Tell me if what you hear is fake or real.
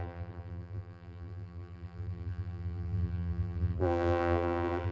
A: fake